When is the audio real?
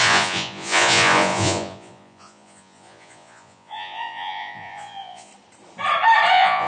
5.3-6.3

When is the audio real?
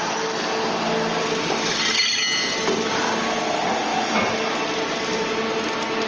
0.0-6.1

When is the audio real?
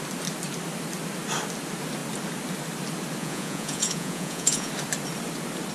0.0-3.2; 4.7-5.7